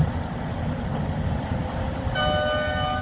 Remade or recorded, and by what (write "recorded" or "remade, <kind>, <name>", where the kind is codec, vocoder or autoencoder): recorded